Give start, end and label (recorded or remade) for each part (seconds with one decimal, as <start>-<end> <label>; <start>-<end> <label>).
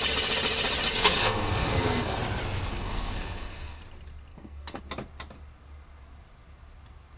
0.0-1.0 recorded; 1.0-2.2 remade; 2.2-2.7 recorded; 2.7-3.8 remade; 3.8-4.3 recorded; 4.3-4.8 remade; 4.8-7.2 recorded